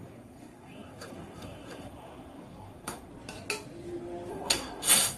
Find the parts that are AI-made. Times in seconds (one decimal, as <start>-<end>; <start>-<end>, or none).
0.0-3.1; 4.3-5.2